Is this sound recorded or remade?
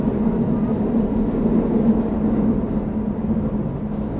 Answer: recorded